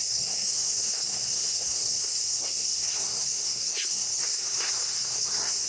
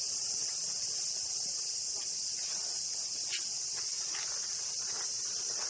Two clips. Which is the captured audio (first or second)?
second